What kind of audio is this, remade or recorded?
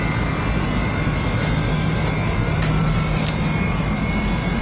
recorded